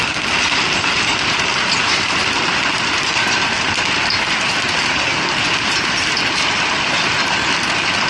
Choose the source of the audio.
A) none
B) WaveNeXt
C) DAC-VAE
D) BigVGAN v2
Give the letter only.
A